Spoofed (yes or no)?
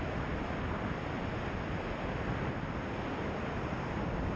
no